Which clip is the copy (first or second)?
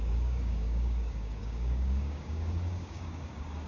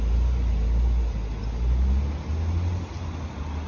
first